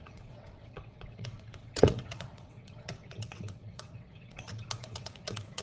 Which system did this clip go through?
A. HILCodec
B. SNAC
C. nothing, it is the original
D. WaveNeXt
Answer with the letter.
D